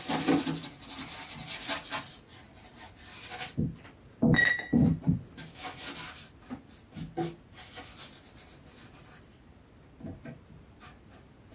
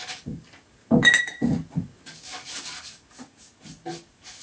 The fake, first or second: second